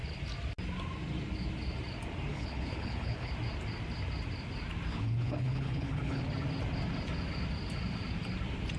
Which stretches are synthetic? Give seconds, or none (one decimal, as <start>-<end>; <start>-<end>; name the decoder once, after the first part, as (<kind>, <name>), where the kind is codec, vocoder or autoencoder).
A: 2.3-3.3 (codec, HILCodec); 4.9-6.2

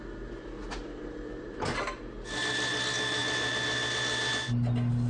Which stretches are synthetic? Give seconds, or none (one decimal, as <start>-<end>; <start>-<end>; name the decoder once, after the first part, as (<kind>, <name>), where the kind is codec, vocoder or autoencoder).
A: none

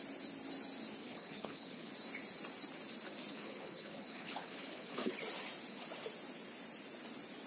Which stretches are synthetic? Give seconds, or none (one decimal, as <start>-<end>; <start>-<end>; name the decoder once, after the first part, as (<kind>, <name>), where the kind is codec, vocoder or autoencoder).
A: 1.0-1.9 (codec, HILCodec); 3.3-5.1